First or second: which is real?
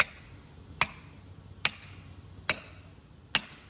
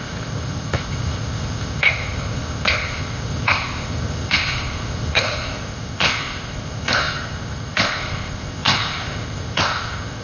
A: first